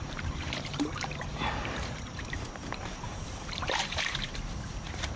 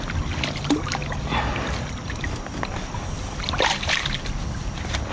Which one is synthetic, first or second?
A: first